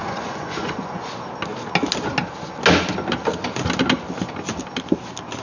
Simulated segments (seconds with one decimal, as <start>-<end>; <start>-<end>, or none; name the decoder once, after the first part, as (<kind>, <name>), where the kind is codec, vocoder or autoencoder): 0.0-1.1 (vocoder, Vocos)